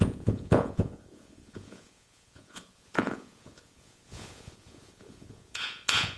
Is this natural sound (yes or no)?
no